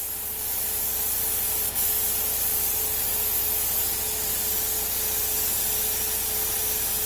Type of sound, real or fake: real